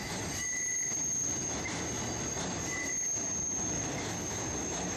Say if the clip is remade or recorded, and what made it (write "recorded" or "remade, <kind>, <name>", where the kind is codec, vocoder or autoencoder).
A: recorded